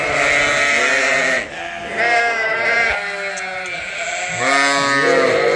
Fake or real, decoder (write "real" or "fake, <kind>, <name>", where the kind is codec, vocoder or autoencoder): real